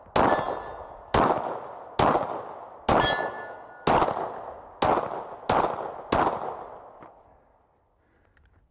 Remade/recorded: recorded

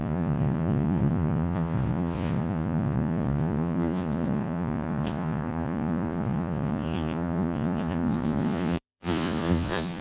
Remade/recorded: remade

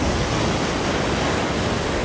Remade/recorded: recorded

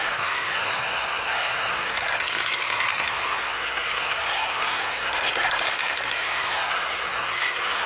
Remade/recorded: remade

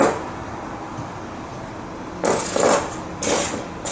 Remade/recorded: recorded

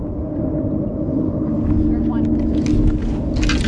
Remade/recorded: recorded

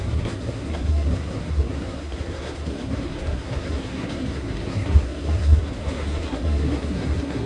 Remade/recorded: remade